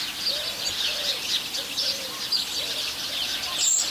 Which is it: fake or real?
real